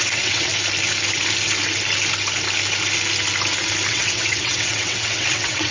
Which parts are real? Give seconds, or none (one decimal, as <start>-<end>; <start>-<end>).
0.5-3.9